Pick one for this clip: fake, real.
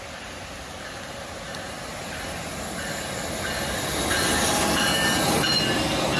real